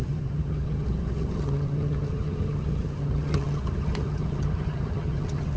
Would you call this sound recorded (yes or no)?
no